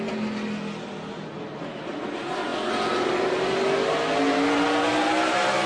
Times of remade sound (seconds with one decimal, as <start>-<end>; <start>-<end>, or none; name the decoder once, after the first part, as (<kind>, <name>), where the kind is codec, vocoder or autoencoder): none

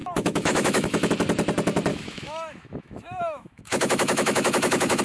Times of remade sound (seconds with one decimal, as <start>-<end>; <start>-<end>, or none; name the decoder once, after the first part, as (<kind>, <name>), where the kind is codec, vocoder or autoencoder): 0.0-1.1 (autoencoder, DAC-VAE); 1.9-5.0